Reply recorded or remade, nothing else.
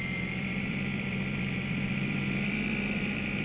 remade